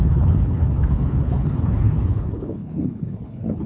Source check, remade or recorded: remade